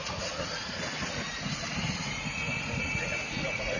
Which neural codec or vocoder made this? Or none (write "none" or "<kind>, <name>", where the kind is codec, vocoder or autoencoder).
vocoder, Vocos